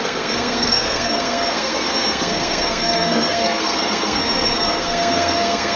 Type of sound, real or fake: fake